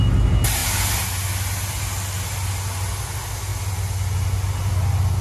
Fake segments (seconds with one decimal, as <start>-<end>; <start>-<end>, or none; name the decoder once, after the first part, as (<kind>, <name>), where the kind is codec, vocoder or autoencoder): none